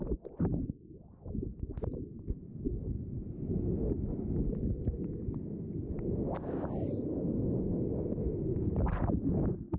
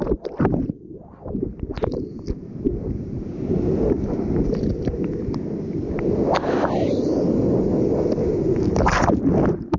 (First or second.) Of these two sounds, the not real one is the second